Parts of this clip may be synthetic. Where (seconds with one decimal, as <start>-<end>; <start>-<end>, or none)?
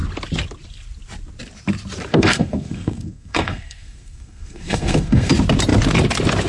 2.1-5.3